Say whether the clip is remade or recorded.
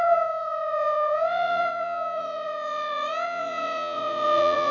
remade